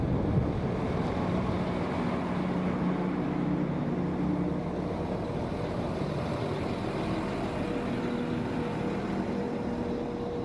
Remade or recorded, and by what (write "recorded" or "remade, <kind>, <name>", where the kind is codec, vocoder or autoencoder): recorded